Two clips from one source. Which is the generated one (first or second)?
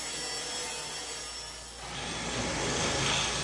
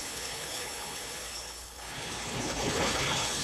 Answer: second